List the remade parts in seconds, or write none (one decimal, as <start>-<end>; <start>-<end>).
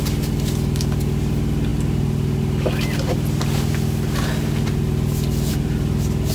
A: none